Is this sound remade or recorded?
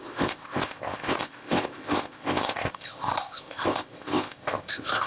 remade